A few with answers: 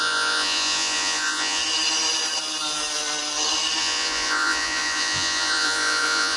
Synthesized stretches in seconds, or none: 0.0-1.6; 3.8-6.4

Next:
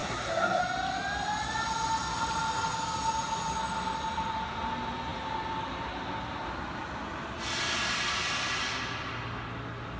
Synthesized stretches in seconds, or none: 0.0-0.6

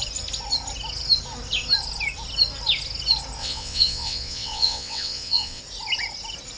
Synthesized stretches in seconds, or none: 3.4-5.6

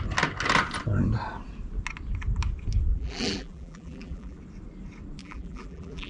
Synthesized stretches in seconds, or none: 2.9-4.4; 5.2-6.1